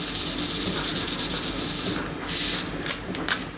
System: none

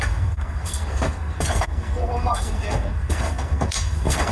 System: codec, SNAC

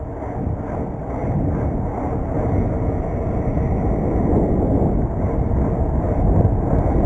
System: none